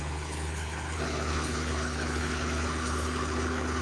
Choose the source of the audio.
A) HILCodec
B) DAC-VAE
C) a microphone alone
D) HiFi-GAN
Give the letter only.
A